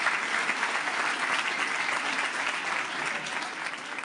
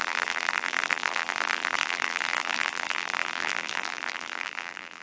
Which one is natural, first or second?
first